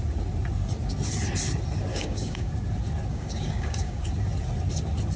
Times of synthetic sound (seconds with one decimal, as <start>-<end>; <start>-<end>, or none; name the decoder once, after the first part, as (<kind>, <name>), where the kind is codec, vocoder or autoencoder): 1.9-2.5 (codec, DAC); 3.1-4.0